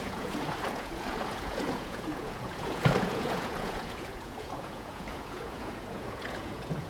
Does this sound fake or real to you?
fake